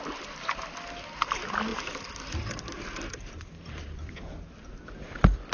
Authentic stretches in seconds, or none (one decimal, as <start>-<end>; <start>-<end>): 0.0-1.7; 4.8-5.5